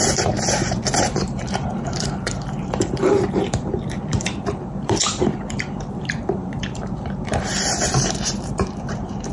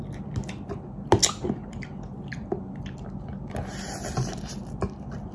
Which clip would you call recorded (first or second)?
second